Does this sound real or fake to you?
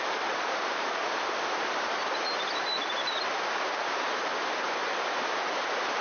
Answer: fake